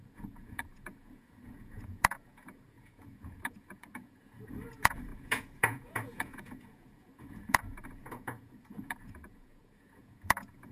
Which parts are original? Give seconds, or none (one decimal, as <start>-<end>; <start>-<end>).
none